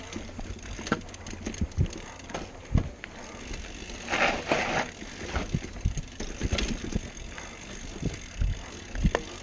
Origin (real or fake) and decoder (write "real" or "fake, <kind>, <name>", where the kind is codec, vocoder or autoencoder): real